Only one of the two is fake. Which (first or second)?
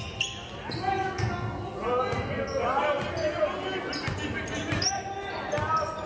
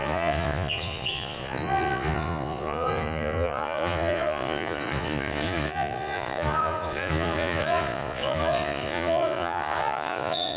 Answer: second